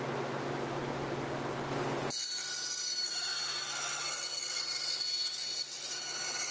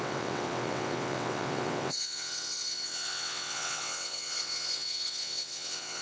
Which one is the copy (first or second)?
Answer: second